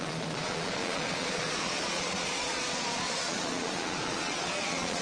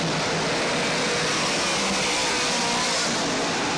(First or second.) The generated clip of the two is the first